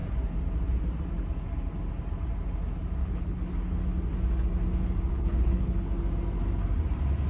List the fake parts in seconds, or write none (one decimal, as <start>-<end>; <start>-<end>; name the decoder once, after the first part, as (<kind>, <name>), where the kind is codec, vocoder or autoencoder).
3.0-3.5 (codec, HILCodec); 5.1-5.9